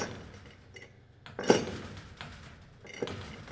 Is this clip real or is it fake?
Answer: real